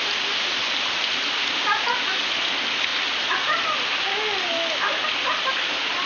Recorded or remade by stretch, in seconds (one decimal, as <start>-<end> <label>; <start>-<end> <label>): 0.0-6.1 recorded